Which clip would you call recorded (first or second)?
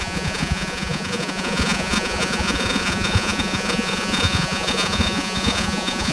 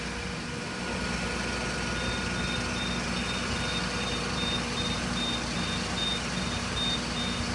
second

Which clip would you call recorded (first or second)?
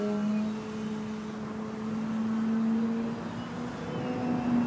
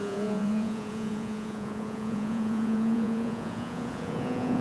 first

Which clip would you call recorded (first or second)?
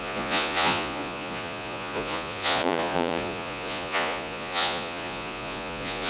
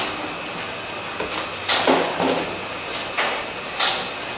second